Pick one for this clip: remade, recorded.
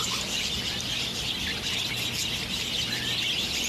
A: recorded